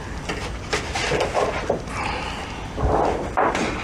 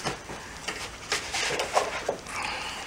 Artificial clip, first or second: second